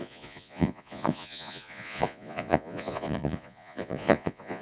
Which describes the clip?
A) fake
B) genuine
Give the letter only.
A